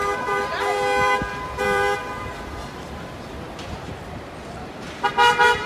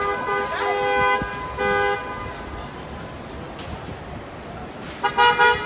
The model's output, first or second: first